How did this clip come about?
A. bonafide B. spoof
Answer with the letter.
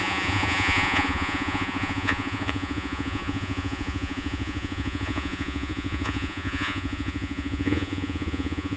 B